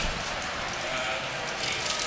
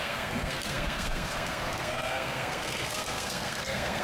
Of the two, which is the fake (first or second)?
second